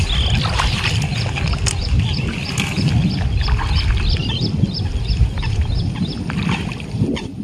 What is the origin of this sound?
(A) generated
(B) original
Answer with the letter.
B